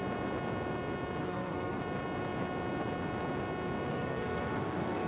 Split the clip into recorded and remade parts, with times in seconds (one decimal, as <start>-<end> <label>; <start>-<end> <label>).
0.0-1.2 recorded; 1.2-1.8 remade; 1.8-3.9 recorded; 3.9-5.1 remade

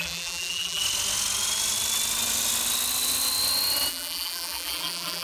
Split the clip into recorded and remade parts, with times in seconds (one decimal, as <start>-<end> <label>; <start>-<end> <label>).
0.0-0.8 remade; 0.8-3.9 recorded; 3.9-5.2 remade

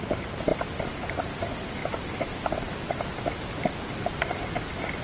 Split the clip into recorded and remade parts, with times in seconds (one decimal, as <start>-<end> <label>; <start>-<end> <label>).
0.0-5.0 recorded

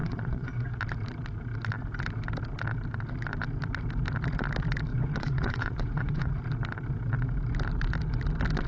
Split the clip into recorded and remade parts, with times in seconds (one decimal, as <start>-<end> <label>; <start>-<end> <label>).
0.0-0.8 remade; 0.8-4.9 recorded; 4.9-6.4 remade; 6.4-8.7 recorded

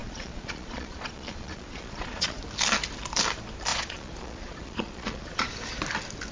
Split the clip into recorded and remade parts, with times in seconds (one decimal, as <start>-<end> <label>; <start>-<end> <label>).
0.0-2.4 remade; 2.4-3.7 recorded; 3.7-5.5 remade; 5.5-6.3 recorded

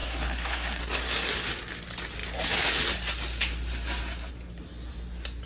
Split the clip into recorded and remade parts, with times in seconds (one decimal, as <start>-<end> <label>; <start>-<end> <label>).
0.0-0.8 remade; 0.8-5.5 recorded